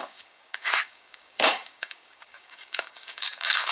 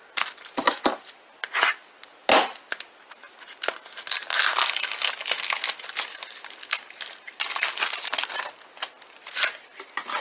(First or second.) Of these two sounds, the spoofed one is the first